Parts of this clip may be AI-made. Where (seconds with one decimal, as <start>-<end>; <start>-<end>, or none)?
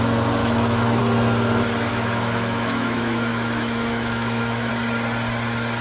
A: 0.4-1.0; 1.9-4.7